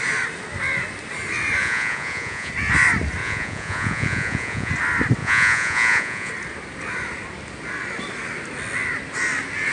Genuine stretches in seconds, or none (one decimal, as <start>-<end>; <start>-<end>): 0.0-1.6; 2.5-3.2; 4.7-5.2; 6.3-9.7